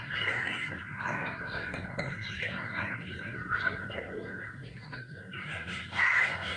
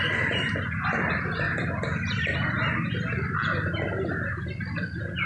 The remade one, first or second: first